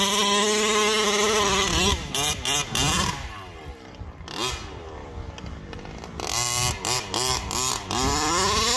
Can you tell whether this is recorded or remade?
recorded